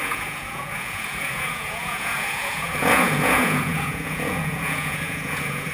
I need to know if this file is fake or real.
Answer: fake